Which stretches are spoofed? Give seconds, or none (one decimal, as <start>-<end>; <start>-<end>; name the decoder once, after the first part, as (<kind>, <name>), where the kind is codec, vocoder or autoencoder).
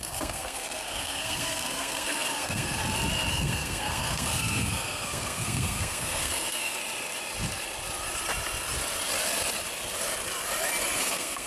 0.0-2.8 (codec, SNAC); 3.3-6.8; 11.0-11.5